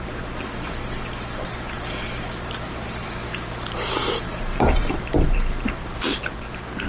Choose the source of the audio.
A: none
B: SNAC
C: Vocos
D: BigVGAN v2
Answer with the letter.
D